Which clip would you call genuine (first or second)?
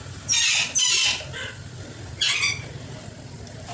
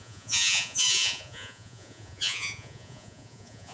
first